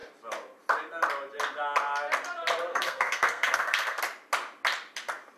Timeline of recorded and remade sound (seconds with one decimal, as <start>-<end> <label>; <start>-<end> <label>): 0.0-2.7 recorded; 2.7-4.0 remade; 4.0-5.4 recorded